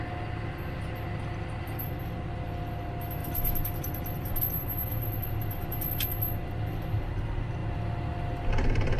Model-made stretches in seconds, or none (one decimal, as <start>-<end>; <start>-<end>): none